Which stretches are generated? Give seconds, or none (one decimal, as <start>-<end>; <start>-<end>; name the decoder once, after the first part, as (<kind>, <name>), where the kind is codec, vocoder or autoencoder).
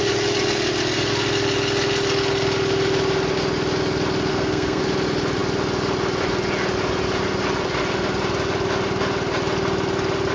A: 4.3-4.8 (codec, SNAC)